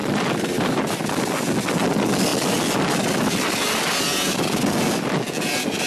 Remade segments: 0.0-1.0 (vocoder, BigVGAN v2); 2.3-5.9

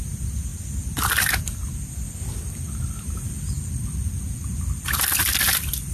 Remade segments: none

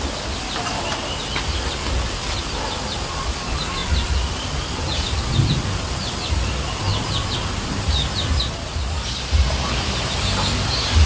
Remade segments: none

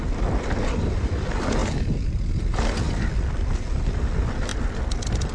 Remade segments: none